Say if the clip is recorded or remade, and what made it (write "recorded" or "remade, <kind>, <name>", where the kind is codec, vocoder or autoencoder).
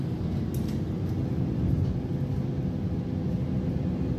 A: recorded